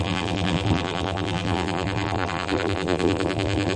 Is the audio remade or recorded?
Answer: remade